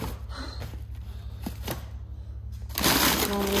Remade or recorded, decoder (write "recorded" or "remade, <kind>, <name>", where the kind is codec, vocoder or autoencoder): recorded